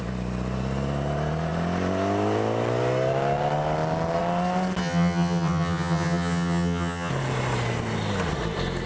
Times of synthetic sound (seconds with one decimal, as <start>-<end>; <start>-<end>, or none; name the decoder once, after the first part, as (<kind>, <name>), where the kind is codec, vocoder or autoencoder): 4.8-7.1 (vocoder, HiFi-GAN)